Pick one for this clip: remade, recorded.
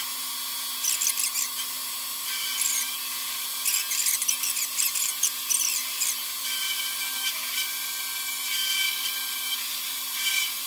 recorded